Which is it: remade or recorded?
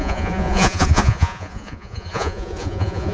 remade